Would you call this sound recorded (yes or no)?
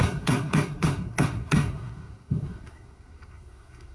no